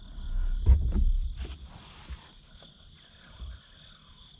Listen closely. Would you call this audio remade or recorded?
recorded